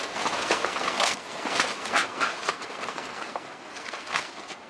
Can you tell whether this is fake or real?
fake